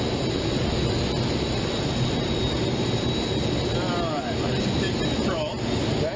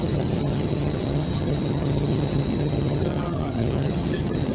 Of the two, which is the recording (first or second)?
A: first